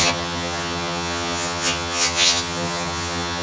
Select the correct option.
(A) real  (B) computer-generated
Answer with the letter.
B